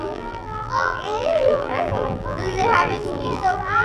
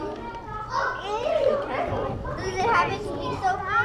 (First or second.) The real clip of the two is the second